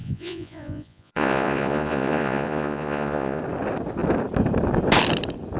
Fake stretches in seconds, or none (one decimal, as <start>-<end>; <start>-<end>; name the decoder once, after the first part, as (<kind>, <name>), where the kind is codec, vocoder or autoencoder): 0.0-3.4 (vocoder, Vocos)